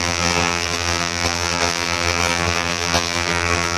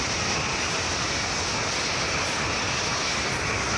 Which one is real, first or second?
second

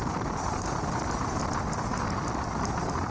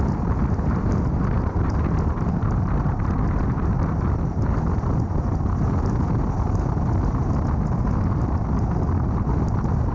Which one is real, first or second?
second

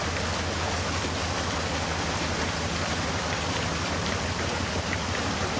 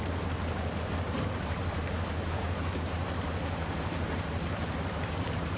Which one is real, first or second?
first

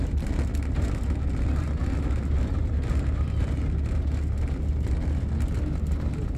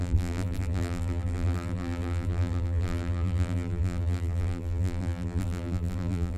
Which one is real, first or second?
first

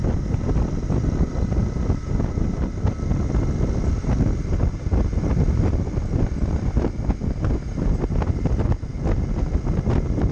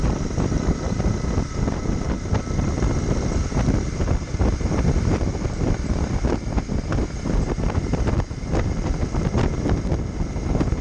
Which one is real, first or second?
first